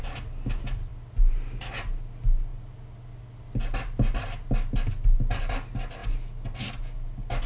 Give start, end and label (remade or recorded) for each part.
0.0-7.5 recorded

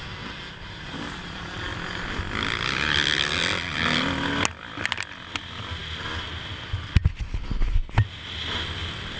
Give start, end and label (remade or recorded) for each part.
0.0-9.2 recorded

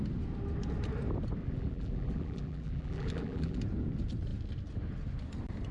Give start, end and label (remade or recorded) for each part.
0.0-1.4 recorded; 1.4-3.6 remade; 3.6-5.7 recorded

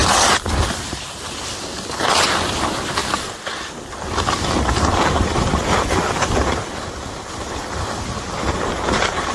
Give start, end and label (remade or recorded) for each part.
0.0-9.3 recorded

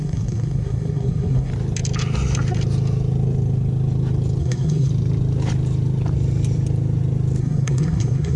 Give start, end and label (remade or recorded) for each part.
0.0-1.5 remade; 1.5-4.4 recorded; 4.4-4.9 remade; 4.9-7.4 recorded; 7.4-8.4 remade

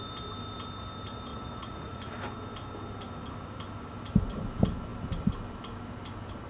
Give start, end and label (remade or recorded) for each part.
0.0-1.3 recorded; 1.3-2.1 remade; 2.1-6.5 recorded